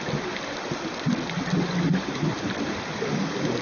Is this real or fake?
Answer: real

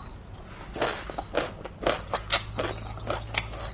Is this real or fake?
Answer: real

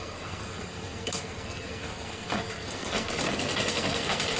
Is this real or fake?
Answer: fake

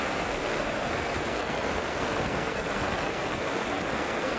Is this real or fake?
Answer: fake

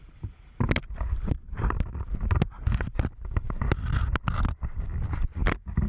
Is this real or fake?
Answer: real